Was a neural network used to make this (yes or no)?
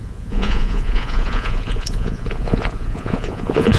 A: yes